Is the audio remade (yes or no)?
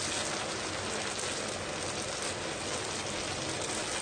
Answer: no